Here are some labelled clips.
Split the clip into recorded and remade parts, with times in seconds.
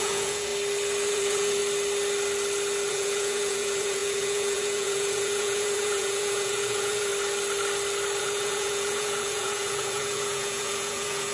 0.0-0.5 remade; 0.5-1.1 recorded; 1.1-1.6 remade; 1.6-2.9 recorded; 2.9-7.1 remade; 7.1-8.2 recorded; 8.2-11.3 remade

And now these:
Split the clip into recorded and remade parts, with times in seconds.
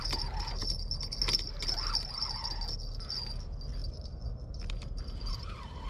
0.0-5.9 recorded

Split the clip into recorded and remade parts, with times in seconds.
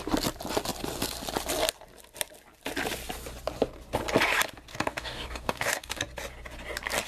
0.0-4.7 recorded; 4.7-6.0 remade; 6.0-7.1 recorded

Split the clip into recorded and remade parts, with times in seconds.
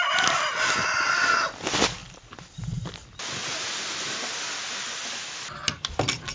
0.0-6.3 recorded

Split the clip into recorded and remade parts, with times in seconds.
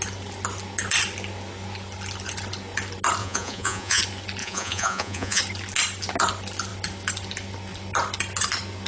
0.0-3.2 recorded; 3.2-4.0 remade; 4.0-4.4 recorded; 4.4-5.4 remade; 5.4-8.9 recorded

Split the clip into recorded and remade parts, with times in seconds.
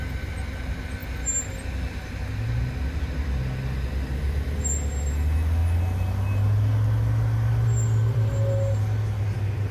0.0-9.7 recorded